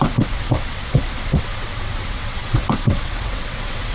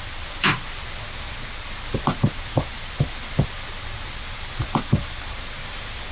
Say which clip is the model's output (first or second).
first